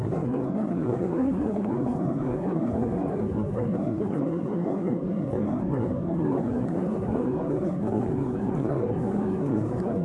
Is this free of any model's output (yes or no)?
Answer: no